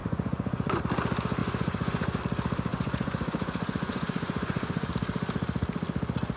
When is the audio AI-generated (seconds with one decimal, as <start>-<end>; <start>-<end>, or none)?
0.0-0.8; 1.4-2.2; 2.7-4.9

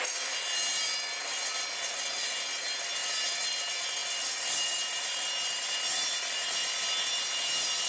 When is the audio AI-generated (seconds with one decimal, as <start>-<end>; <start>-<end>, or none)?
none

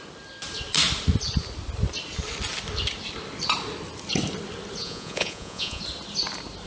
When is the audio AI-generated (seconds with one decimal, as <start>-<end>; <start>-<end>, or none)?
4.8-5.8